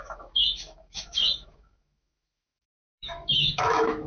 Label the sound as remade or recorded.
remade